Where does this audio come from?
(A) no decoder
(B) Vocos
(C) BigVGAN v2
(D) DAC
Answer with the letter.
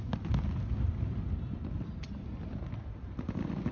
A